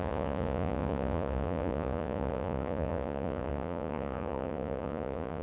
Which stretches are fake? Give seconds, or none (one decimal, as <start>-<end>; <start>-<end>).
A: 0.0-5.4